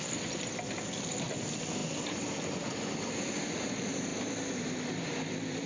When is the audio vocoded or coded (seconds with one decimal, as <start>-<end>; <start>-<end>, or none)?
0.0-4.1; 4.9-5.7